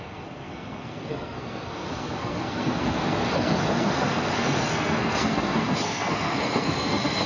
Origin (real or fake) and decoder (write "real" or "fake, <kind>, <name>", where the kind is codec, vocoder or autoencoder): fake, codec, SNAC